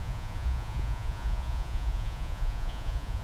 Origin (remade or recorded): remade